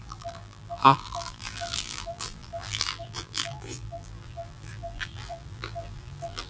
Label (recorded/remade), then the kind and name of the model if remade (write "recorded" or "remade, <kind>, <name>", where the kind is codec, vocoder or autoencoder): remade, vocoder, BigVGAN v2